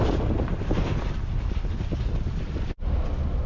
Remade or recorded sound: recorded